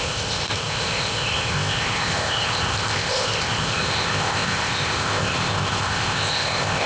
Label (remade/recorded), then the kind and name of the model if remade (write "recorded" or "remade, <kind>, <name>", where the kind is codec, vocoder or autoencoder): remade, codec, ZipCodec